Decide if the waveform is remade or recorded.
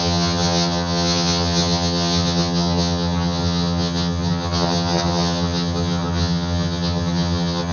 remade